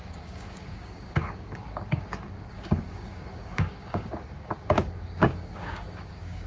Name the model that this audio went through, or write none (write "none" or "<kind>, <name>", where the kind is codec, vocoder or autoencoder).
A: codec, DAC